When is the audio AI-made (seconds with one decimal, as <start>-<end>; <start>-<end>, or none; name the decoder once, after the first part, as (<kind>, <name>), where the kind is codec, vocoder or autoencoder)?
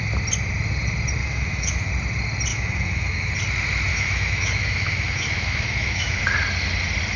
1.2-1.9 (autoencoder, DAC-VAE); 2.5-3.3; 3.9-6.2